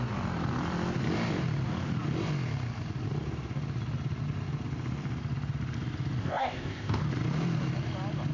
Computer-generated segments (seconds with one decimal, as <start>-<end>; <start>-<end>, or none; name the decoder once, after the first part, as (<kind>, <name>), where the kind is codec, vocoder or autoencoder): 6.2-7.0 (codec, ZipCodec)